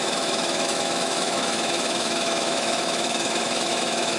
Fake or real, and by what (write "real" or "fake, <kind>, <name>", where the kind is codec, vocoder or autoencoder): fake, autoencoder, DAC-VAE